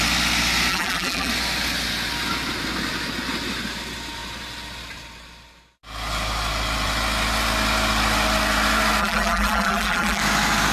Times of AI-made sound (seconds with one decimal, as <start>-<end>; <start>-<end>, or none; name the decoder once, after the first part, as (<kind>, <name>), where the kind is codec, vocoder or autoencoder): 0.7-1.3 (vocoder, BigVGAN v2); 9.0-10.2